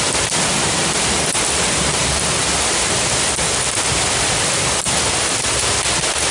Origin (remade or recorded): recorded